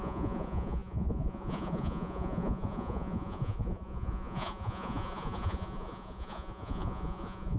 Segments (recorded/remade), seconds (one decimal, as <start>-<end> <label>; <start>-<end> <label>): 0.0-7.6 remade